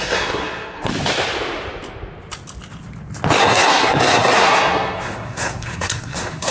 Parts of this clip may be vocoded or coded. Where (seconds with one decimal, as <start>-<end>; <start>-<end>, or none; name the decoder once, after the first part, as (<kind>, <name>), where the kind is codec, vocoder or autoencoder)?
0.0-0.9 (codec, SNAC); 3.4-6.5